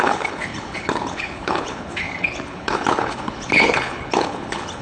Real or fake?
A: fake